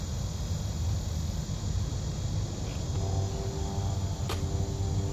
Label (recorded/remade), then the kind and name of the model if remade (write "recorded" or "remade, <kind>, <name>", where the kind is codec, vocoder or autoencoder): recorded